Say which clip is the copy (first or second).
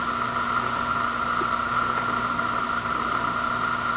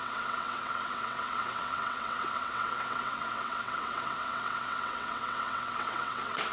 second